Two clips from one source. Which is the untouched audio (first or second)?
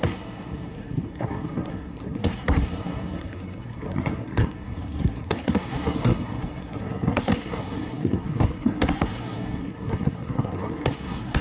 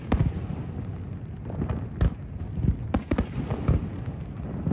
second